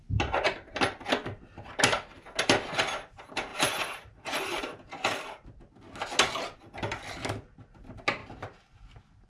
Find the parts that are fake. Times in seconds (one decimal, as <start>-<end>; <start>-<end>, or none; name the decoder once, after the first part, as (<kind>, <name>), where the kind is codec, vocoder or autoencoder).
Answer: 3.5-4.6 (vocoder, BigVGAN v2); 8.2-8.8

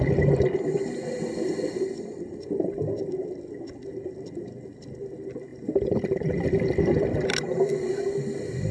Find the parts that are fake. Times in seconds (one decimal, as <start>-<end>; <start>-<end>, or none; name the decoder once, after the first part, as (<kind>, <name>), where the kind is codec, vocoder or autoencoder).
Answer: 5.5-7.9 (vocoder, BigVGAN v2)

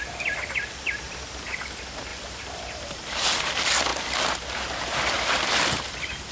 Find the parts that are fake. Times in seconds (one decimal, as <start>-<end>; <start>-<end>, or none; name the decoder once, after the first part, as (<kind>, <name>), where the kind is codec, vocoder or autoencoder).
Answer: 2.1-3.5 (vocoder, BigVGAN v2)

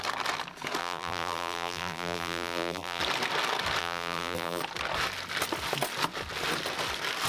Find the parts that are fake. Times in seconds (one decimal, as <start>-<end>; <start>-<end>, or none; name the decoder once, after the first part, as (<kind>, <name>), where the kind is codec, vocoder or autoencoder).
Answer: 0.8-3.0 (vocoder, BigVGAN v2); 3.8-4.6

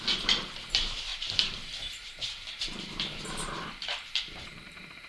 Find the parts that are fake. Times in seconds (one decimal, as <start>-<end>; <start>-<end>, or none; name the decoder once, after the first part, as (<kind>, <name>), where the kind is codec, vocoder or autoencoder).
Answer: 0.0-5.1 (vocoder, BigVGAN v2)

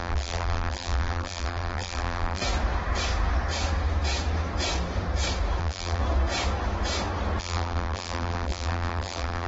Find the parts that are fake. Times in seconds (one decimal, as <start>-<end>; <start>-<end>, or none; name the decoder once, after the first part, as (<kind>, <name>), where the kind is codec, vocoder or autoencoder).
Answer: 0.0-2.4 (vocoder, BigVGAN v2); 5.6-6.0; 7.4-9.5

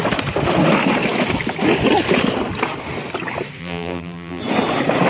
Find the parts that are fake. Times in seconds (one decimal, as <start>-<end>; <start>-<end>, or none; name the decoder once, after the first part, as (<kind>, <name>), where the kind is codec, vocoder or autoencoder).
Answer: 3.6-4.4 (vocoder, BigVGAN v2)